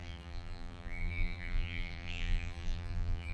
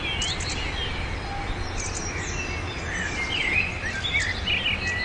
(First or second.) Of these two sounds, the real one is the second